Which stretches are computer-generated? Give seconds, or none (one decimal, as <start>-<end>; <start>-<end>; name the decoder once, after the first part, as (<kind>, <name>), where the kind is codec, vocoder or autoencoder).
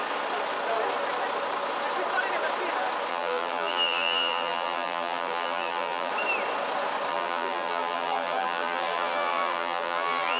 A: 3.1-6.1 (vocoder, BigVGAN v2); 7.1-10.4